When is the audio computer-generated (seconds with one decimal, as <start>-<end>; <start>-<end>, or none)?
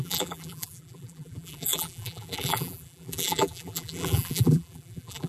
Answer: 0.0-5.3